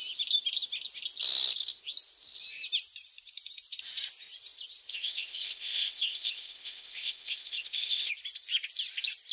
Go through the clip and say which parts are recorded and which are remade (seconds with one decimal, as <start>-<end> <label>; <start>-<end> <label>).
0.0-4.9 recorded; 4.9-8.1 remade; 8.1-9.3 recorded